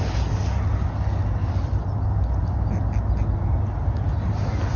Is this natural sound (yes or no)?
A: yes